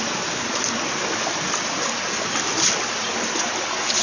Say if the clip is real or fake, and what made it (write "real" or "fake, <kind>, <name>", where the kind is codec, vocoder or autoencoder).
real